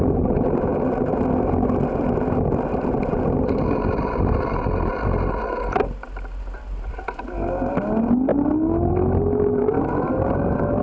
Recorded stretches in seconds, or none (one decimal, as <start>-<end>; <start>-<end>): 0.0-10.8